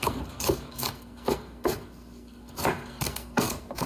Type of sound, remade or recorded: remade